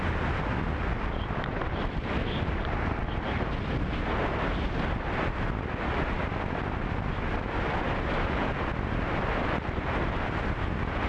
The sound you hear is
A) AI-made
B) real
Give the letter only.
B